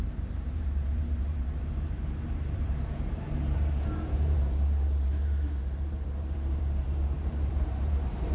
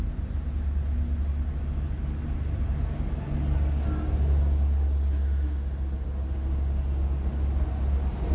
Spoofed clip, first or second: first